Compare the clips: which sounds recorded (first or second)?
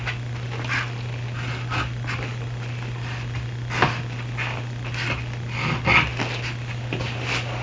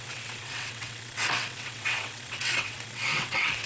first